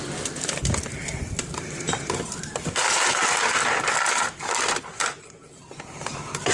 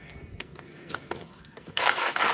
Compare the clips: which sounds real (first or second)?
first